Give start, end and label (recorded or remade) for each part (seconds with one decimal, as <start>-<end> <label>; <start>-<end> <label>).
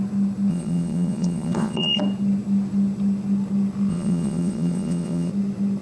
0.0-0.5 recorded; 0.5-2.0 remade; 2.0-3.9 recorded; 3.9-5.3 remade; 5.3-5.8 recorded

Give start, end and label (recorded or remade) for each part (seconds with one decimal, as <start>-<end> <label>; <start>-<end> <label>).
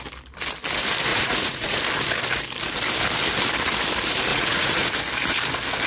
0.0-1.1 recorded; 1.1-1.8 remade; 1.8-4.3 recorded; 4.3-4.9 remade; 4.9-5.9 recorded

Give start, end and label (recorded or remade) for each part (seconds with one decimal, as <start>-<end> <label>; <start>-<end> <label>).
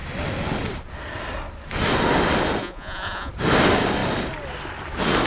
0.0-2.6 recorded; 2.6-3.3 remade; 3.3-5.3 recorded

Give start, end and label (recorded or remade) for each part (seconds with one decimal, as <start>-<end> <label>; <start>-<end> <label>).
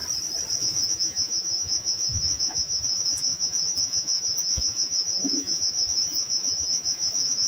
0.0-0.6 recorded; 0.6-7.5 remade